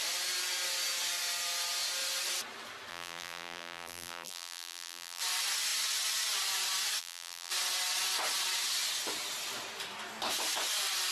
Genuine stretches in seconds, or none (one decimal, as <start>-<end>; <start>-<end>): 0.0-2.9; 5.2-7.0; 7.5-11.1